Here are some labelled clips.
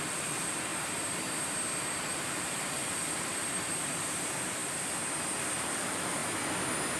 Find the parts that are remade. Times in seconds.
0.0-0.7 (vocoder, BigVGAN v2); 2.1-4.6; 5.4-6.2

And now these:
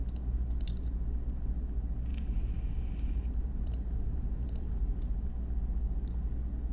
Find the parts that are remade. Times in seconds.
2.1-5.3 (vocoder, BigVGAN v2)